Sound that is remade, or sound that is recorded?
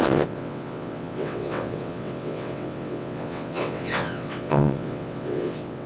remade